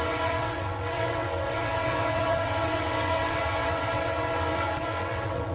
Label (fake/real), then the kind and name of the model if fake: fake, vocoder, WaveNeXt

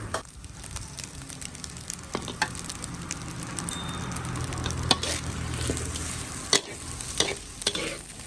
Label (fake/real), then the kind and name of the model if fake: real